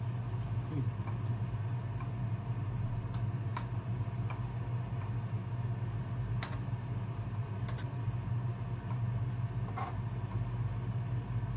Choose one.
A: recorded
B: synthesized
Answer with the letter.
A